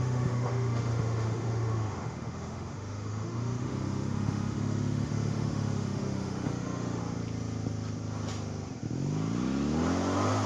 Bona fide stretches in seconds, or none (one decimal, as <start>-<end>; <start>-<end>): 7.0-10.5